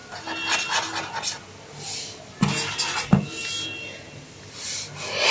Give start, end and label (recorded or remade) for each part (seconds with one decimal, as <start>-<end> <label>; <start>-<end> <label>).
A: 0.0-5.3 recorded

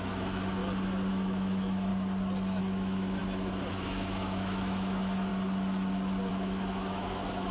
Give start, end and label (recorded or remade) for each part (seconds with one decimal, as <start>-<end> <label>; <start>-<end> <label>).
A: 0.0-0.6 remade; 0.6-1.1 recorded; 1.1-1.9 remade; 1.9-2.6 recorded; 2.6-3.2 remade; 3.2-3.7 recorded; 3.7-5.3 remade; 5.3-6.3 recorded; 6.3-7.5 remade

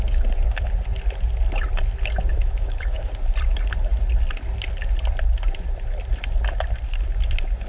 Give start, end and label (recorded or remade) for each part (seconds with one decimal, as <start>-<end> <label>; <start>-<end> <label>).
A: 0.0-2.3 recorded; 2.3-3.1 remade; 3.1-7.7 recorded

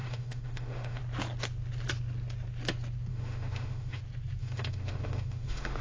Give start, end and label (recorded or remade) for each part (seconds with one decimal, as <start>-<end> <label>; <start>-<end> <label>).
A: 0.0-1.0 remade; 1.0-3.1 recorded; 3.1-4.0 remade; 4.0-4.4 recorded; 4.4-5.8 remade

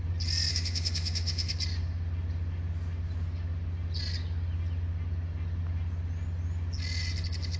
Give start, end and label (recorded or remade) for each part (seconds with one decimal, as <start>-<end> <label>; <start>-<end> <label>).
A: 0.0-0.5 recorded; 0.5-1.5 remade; 1.5-7.6 recorded

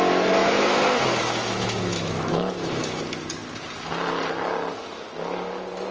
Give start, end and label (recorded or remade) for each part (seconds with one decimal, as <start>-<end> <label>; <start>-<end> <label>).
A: 0.0-0.4 recorded; 0.4-3.0 remade; 3.0-5.9 recorded

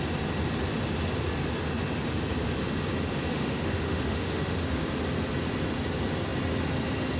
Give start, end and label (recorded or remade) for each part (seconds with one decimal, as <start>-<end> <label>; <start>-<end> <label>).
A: 0.0-3.3 recorded; 3.3-4.8 remade; 4.8-7.2 recorded